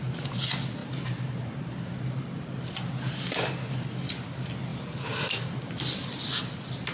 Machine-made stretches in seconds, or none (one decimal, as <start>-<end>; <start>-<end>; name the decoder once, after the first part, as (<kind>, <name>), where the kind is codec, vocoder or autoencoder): 0.8-1.5 (vocoder, BigVGAN v2); 4.7-5.7